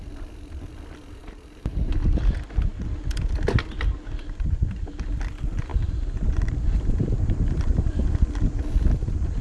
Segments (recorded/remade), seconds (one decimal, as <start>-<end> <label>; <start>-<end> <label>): 0.0-1.2 recorded; 1.2-2.2 remade; 2.2-5.7 recorded; 5.7-7.9 remade; 7.9-9.4 recorded